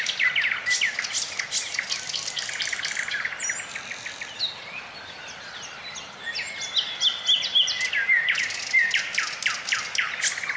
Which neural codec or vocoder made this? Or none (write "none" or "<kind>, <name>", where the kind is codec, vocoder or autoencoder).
none